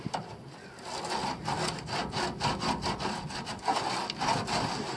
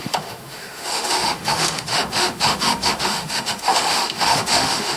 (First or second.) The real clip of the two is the first